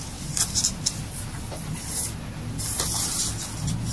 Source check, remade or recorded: recorded